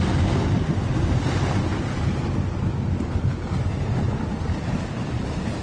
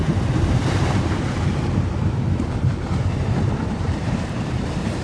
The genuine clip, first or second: first